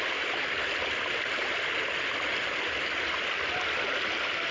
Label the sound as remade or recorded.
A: remade